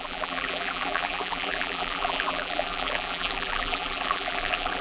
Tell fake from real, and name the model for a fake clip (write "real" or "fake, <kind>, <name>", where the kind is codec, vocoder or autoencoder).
fake, vocoder, BigVGAN v2